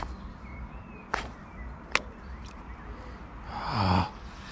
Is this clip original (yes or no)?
yes